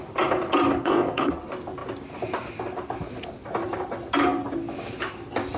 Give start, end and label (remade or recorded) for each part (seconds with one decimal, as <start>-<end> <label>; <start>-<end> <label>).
0.0-0.8 recorded; 0.8-1.3 remade; 1.3-5.6 recorded